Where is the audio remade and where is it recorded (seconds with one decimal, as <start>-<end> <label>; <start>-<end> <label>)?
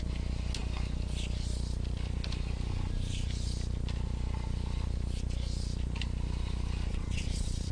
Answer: 0.0-6.9 recorded; 6.9-7.7 remade